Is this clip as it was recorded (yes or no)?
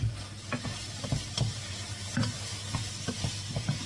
yes